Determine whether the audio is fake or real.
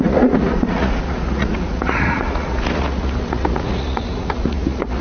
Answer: fake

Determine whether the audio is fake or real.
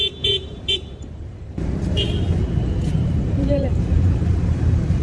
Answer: fake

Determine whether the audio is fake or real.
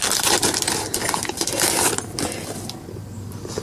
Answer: real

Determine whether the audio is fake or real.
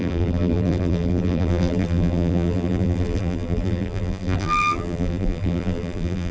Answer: fake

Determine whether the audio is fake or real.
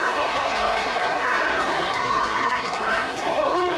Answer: fake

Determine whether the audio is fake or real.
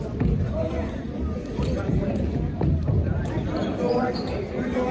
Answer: real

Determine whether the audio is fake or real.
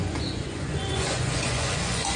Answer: fake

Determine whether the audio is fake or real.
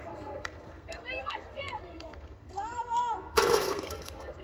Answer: fake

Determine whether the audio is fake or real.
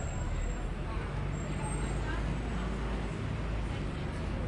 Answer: real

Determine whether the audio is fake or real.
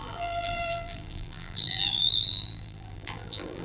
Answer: fake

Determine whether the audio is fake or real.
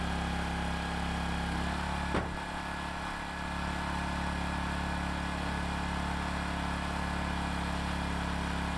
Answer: real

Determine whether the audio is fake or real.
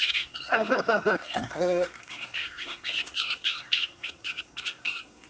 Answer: fake